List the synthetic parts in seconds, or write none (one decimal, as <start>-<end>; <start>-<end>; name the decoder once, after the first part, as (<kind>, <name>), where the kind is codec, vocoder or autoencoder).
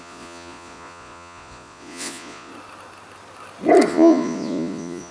0.0-2.5 (vocoder, Vocos); 3.9-5.1